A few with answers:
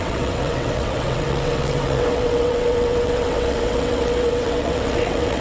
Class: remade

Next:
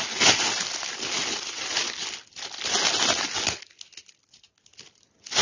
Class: recorded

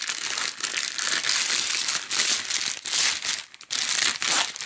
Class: recorded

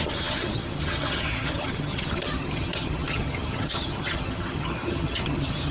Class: remade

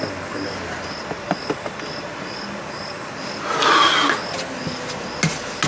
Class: recorded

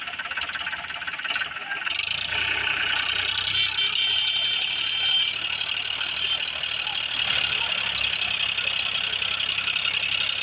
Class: recorded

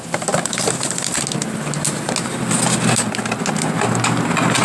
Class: recorded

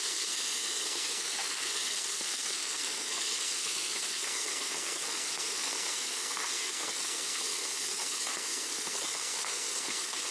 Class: remade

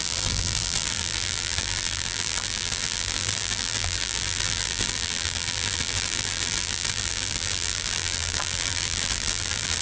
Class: remade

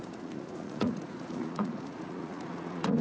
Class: remade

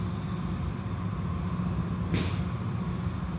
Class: recorded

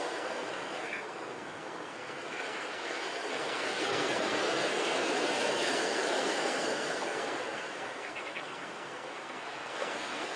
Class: remade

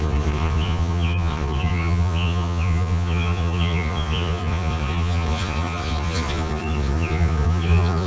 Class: remade